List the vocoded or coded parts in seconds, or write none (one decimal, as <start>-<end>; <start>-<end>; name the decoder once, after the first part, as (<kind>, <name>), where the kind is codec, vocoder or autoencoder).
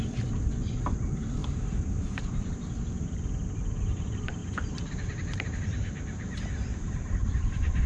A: 0.0-7.9 (vocoder, BigVGAN v2)